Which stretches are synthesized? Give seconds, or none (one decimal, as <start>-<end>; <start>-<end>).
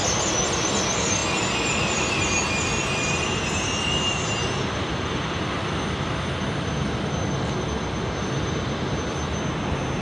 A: none